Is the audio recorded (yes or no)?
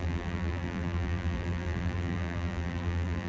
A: no